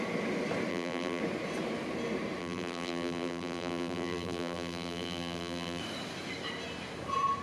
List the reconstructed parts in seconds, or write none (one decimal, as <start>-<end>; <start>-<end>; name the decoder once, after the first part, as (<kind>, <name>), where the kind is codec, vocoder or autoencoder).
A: 0.7-1.2 (vocoder, BigVGAN v2); 2.4-5.8

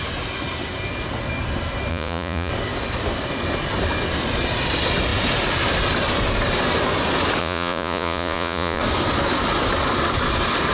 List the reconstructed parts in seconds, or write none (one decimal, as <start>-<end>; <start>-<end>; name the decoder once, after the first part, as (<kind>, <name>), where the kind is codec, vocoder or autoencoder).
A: 1.9-2.5 (vocoder, Vocos); 7.4-8.8